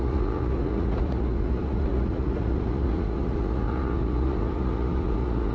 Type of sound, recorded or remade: remade